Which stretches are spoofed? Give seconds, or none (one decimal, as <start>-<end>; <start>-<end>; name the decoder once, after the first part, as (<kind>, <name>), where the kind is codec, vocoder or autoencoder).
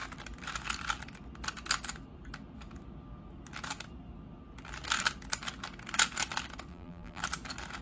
6.7-7.2 (vocoder, BigVGAN v2)